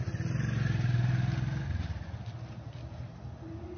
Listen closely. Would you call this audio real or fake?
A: real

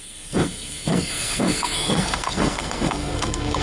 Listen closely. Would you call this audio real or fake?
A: fake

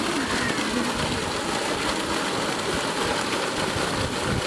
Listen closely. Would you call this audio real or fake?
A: real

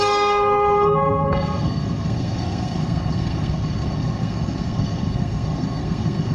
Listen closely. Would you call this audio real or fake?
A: fake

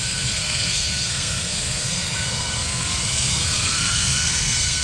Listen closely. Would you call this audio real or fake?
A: fake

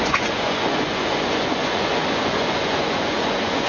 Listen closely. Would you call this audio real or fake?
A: fake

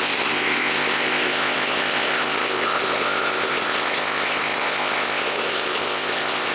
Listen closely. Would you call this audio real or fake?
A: fake